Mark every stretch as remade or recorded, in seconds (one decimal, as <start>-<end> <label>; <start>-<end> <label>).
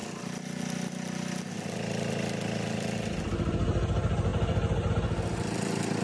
0.0-6.0 recorded